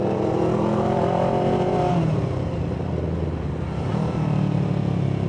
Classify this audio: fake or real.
real